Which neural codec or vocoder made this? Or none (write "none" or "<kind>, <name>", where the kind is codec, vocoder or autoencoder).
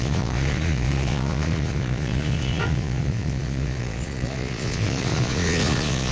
vocoder, Vocos